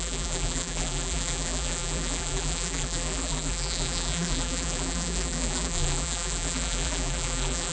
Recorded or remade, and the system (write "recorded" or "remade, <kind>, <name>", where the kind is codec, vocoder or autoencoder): remade, vocoder, BigVGAN v2